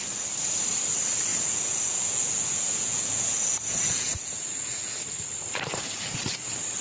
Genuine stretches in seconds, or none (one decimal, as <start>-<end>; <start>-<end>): 0.0-1.3; 4.9-6.8